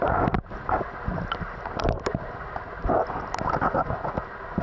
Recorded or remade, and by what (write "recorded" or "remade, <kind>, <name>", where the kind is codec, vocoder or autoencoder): recorded